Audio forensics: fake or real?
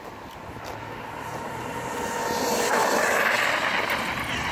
real